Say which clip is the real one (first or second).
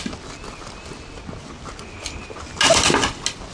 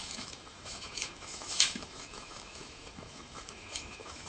first